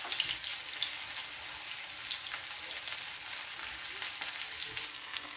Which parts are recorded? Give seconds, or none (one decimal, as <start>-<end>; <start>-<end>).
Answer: 0.0-4.9